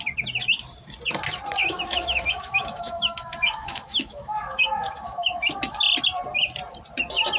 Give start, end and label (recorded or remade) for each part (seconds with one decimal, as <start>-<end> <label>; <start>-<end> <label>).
0.0-1.6 recorded; 1.6-5.8 remade; 5.8-7.4 recorded